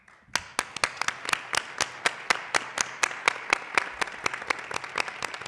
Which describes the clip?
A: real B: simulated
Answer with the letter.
A